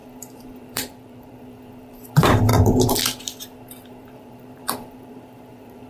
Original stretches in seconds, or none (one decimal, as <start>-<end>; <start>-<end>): 2.5-3.9